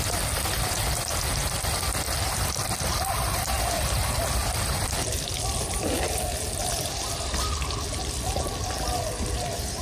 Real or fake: real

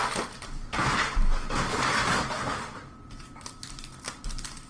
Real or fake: real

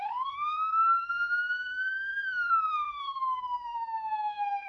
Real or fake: fake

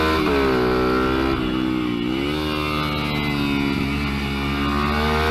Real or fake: real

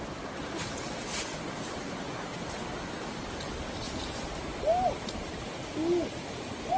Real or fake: real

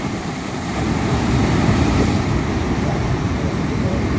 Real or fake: fake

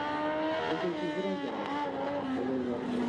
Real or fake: real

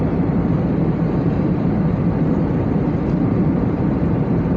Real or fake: fake